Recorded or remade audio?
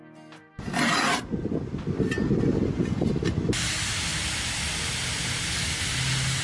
recorded